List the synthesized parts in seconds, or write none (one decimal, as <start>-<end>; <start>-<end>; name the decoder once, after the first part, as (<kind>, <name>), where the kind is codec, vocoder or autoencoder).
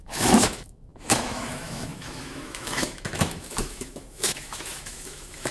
0.0-5.5 (autoencoder, DAC-VAE)